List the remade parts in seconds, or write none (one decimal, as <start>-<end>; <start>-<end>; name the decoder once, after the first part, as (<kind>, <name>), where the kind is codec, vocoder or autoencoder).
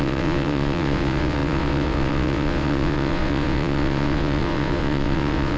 0.0-5.6 (vocoder, WaveNeXt)